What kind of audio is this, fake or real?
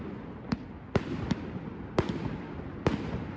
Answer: real